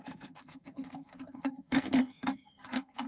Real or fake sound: fake